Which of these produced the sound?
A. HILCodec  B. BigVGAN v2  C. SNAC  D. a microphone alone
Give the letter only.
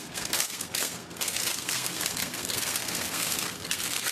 C